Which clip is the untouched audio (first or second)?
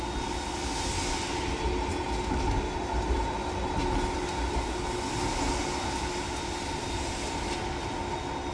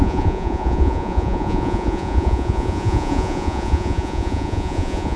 first